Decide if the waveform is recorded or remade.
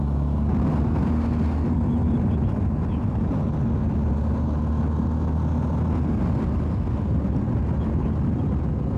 recorded